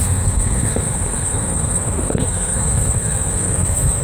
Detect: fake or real fake